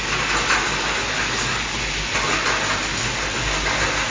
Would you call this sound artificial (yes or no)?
no